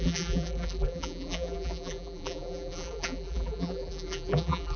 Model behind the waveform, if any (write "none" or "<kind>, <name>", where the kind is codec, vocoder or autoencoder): vocoder, BigVGAN v2